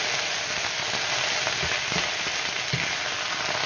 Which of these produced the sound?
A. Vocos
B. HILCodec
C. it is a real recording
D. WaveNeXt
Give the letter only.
C